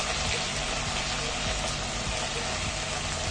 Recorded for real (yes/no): yes